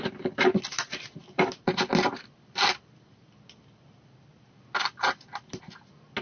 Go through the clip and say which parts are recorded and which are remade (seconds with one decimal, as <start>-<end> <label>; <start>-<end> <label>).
0.0-6.2 recorded